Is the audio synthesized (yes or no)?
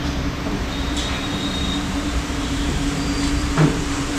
yes